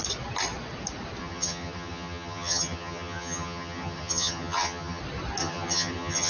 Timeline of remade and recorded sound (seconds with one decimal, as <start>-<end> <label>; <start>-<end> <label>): 0.0-1.2 recorded; 1.2-5.0 remade; 5.0-5.4 recorded; 5.4-6.3 remade